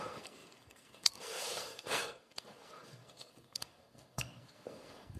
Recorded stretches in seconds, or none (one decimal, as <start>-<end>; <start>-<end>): none